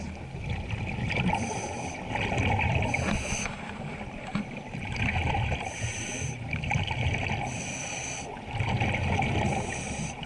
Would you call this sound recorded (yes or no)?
yes